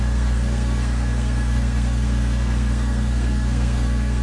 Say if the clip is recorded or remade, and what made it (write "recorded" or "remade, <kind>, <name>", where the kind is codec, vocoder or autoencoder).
remade, codec, SNAC